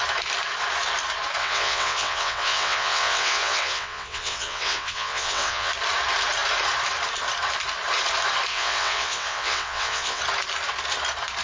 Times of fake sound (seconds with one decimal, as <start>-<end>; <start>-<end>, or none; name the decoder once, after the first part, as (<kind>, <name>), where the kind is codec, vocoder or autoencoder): 1.4-5.7 (vocoder, WaveNeXt); 8.5-10.2

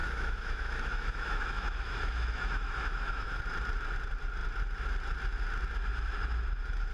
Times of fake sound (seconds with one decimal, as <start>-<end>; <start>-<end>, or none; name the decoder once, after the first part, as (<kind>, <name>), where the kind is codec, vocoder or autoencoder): 0.0-3.4 (autoencoder, DAC-VAE)

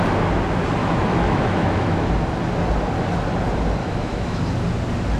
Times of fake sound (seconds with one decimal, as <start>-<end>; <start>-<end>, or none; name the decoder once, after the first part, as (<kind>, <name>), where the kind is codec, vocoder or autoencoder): 0.8-2.1 (autoencoder, DAC-VAE); 3.8-4.4